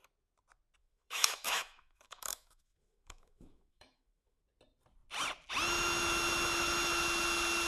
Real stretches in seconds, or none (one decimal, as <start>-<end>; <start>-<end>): 0.0-0.8; 4.4-7.7